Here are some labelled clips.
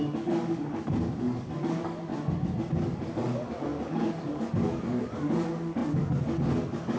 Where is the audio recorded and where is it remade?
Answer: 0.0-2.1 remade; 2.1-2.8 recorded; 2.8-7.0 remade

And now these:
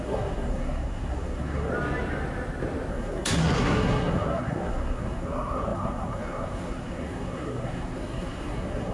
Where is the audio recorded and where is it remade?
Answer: 0.0-1.7 remade; 1.7-2.9 recorded; 2.9-8.9 remade